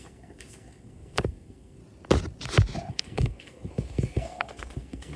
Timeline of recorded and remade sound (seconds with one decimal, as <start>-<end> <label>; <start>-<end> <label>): 0.0-1.8 remade; 1.8-2.9 recorded; 2.9-5.2 remade